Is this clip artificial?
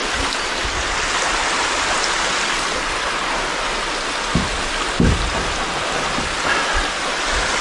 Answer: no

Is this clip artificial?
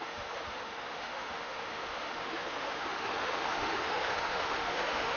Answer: yes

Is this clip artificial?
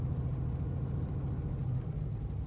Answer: no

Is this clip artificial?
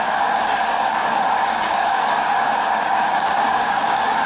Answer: yes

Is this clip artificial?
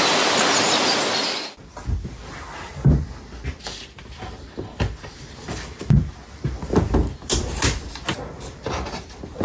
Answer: no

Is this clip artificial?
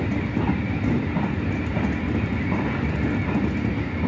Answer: no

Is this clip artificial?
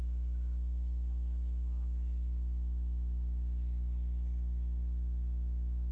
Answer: no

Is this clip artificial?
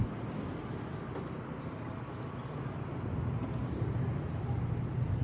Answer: no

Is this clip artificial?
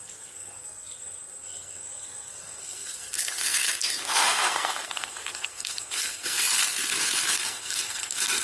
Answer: yes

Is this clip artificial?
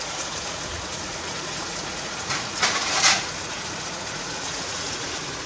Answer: yes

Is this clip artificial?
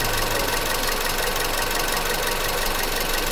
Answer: no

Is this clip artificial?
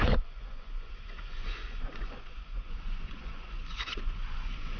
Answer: yes